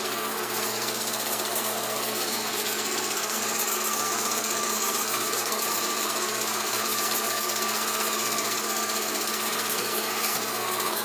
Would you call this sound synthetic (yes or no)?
yes